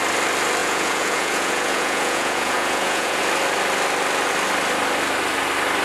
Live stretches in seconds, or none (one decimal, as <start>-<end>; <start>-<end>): 0.0-0.6; 3.2-5.8